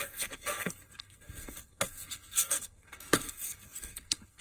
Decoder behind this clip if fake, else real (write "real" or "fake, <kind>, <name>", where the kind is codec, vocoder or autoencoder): fake, codec, SNAC